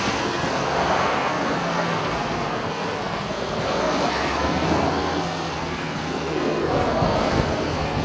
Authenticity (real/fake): fake